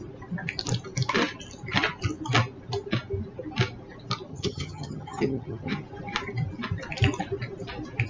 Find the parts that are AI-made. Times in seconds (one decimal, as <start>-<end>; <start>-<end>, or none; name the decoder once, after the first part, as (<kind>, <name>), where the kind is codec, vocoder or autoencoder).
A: 4.3-5.8 (vocoder, HiFi-GAN)